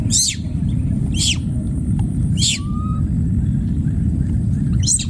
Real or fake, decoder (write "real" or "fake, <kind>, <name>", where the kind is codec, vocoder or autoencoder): fake, vocoder, BigVGAN v2